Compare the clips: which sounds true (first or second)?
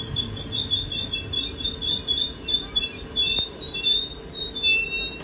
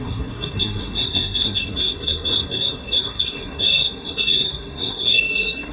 first